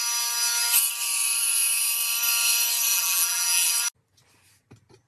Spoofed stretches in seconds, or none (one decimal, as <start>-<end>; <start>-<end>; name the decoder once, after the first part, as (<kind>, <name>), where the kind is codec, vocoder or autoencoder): 2.9-3.7 (vocoder, BigVGAN v2)